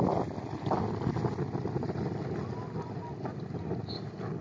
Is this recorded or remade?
recorded